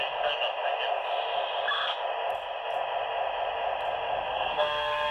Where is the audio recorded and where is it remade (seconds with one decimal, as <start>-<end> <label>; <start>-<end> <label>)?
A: 0.0-4.3 recorded; 4.3-5.1 remade